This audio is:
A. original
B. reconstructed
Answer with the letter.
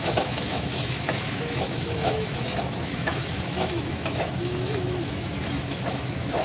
B